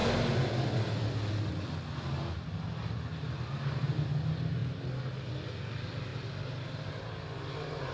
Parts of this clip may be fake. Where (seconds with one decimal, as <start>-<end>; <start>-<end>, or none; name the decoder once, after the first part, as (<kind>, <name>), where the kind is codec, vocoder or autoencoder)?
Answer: 6.1-6.9 (vocoder, BigVGAN v2)